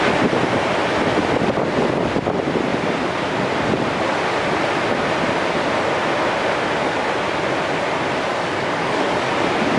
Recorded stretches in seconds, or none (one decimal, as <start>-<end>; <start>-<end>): 0.0-8.3; 9.3-9.8